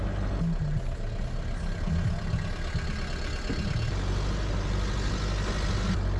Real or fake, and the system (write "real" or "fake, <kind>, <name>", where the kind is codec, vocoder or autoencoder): real